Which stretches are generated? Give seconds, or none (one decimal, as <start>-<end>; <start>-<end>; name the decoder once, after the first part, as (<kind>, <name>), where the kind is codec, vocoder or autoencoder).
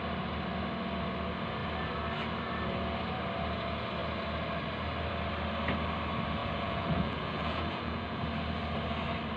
6.4-8.2 (vocoder, Vocos)